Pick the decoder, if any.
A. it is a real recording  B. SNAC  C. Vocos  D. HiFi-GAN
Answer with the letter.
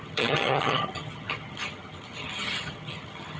D